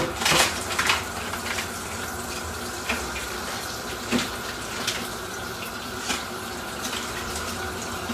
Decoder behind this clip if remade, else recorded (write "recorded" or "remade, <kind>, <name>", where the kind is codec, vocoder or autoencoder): remade, vocoder, BigVGAN v2